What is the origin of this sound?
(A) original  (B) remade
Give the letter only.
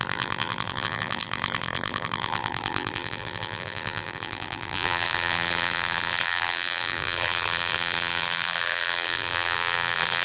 B